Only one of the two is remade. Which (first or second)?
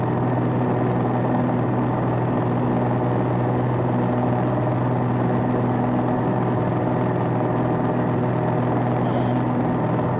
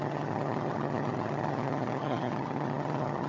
second